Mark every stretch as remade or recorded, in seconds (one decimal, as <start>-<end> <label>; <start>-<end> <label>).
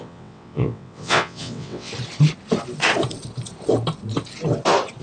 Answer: 0.0-1.9 remade; 1.9-5.0 recorded